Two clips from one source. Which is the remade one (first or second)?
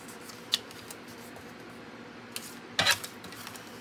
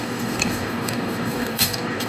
second